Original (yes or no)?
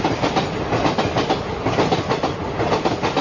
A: yes